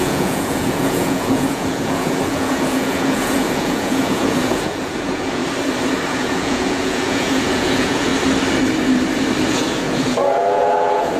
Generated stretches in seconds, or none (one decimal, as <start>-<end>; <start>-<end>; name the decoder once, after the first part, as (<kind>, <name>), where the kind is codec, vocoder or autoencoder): 0.0-5.4 (vocoder, Vocos); 6.1-8.1; 9.5-11.2